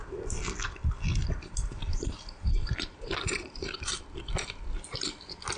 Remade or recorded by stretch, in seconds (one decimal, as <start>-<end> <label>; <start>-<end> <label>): 0.0-1.2 recorded; 1.2-4.6 remade; 4.6-5.6 recorded